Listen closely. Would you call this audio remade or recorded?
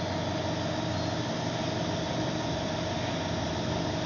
recorded